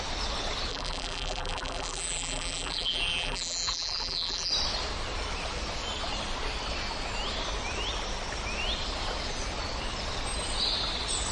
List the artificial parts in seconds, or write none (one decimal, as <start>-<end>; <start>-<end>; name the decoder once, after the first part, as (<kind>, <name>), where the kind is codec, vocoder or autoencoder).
0.7-4.5 (vocoder, BigVGAN v2)